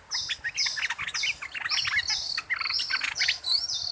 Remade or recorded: recorded